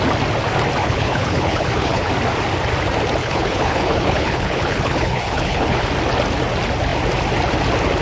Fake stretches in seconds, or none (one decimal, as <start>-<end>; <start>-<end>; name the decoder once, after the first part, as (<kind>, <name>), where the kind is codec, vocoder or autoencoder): 0.8-2.1 (codec, HILCodec); 3.2-5.9